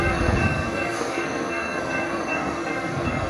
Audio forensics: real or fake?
fake